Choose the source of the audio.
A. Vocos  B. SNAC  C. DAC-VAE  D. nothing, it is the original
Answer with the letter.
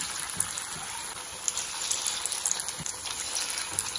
D